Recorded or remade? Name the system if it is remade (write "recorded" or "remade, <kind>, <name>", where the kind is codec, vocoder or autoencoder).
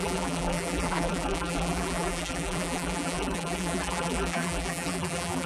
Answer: remade, vocoder, BigVGAN v2